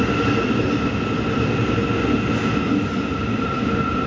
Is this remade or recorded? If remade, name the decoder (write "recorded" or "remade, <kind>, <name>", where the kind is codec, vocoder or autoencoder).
recorded